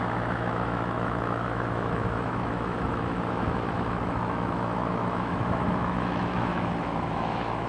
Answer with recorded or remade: remade